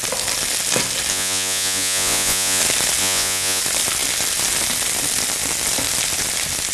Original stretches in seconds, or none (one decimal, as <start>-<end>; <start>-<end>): 0.0-1.1; 2.6-3.0; 3.6-6.7